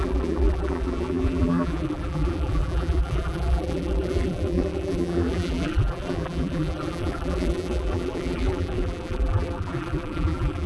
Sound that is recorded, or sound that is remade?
remade